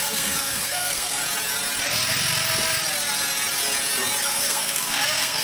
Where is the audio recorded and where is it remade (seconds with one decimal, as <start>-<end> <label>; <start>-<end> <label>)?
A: 0.0-1.2 remade; 1.2-4.2 recorded; 4.2-5.4 remade